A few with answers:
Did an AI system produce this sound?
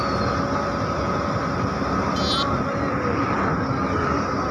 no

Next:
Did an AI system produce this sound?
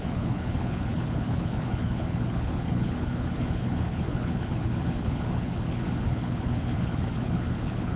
yes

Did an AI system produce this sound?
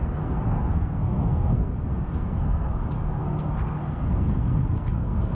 yes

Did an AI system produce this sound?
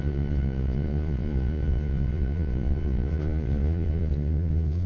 yes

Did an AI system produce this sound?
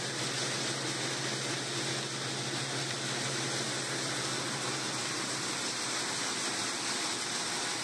no